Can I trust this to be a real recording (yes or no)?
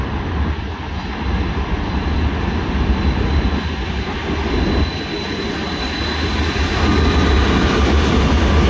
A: yes